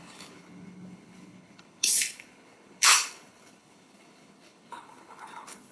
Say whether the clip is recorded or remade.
remade